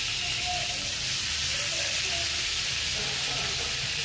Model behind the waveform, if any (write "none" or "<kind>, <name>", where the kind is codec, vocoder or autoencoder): none